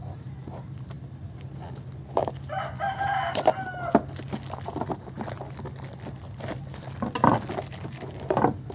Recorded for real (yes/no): yes